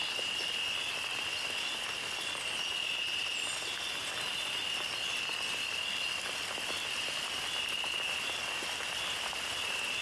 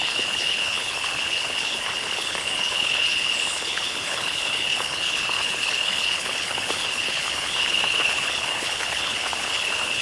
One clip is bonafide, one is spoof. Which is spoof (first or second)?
second